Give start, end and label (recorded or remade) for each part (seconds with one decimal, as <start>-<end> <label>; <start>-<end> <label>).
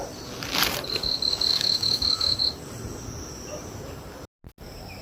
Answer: 0.0-1.5 recorded; 1.5-2.4 remade; 2.4-5.0 recorded